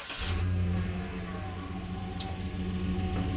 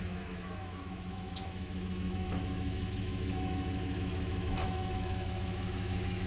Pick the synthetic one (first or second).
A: second